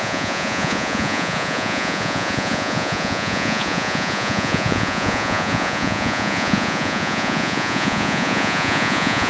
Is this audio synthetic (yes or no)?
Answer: yes